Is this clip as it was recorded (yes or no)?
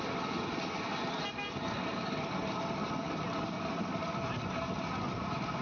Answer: no